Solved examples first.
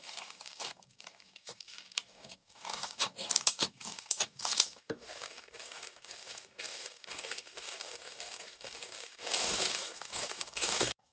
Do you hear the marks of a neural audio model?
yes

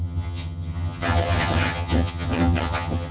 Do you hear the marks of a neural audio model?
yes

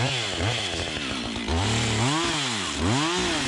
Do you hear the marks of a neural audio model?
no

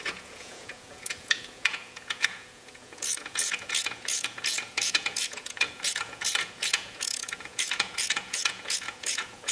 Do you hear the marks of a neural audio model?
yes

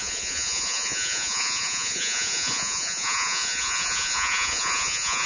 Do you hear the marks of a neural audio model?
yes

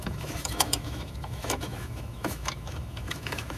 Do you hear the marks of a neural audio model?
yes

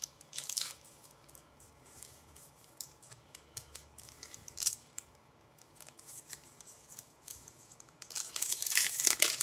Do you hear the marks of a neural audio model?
yes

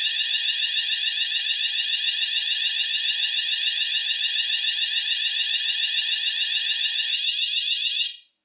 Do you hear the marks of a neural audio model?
no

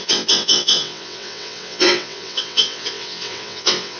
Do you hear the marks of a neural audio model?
yes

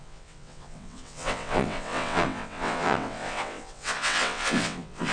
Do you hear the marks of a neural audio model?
yes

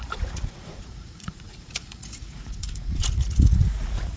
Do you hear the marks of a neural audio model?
yes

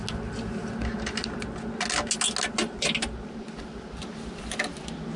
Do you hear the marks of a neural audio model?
no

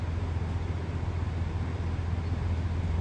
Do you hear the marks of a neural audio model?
no